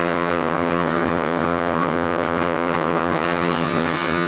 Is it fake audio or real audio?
fake